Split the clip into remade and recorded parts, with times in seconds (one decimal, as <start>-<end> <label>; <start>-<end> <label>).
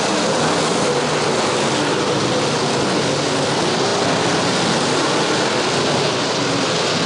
0.0-7.1 recorded